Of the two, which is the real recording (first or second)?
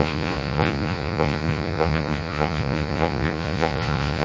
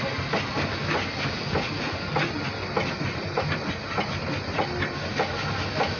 second